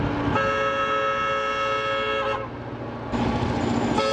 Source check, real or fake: real